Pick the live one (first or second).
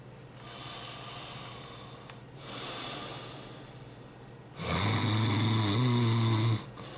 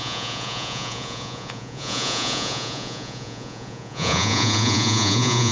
first